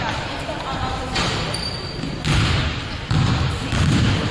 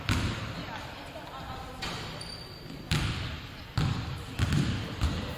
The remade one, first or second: first